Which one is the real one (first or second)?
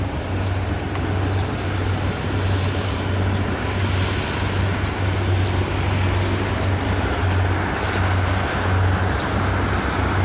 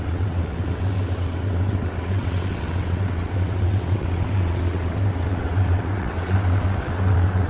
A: first